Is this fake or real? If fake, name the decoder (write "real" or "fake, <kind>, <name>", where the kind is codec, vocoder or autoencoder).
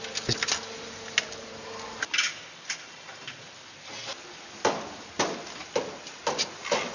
real